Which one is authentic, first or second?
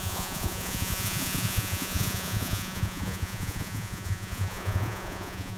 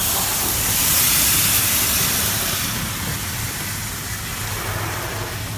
second